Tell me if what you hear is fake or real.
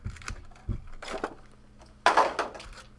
real